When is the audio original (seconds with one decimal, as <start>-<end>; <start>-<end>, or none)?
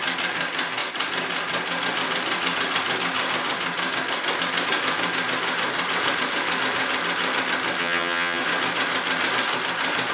0.0-7.8; 8.4-10.1